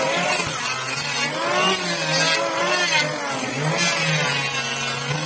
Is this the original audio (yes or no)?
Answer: yes